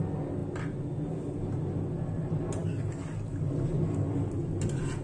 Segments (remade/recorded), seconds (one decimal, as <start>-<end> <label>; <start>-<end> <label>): 0.0-5.0 recorded